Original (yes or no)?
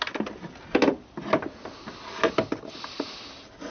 yes